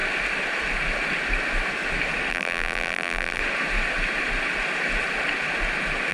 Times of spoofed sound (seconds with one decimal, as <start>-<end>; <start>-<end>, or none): 2.3-3.4